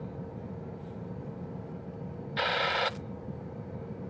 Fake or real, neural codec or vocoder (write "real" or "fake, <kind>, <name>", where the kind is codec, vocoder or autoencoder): real